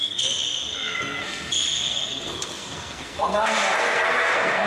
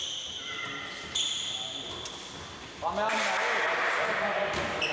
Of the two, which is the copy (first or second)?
first